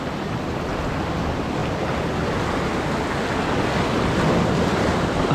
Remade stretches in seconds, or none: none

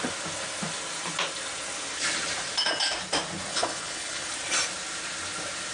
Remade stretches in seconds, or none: 3.5-4.3 (codec, HILCodec)

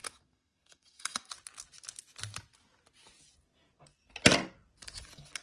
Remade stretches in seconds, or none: 0.0-1.3 (autoencoder, DAC-VAE)

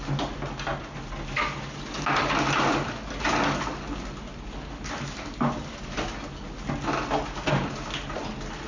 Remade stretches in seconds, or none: none

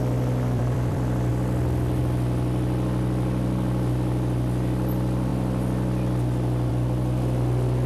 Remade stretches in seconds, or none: 0.0-1.3 (vocoder, BigVGAN v2); 2.0-5.3; 6.7-7.9

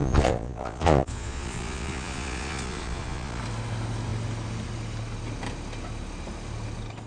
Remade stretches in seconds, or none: 0.0-3.4 (vocoder, Vocos)